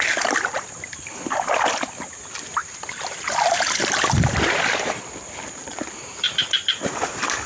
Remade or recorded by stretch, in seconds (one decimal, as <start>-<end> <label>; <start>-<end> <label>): 0.0-2.6 recorded; 2.6-7.1 remade; 7.1-7.5 recorded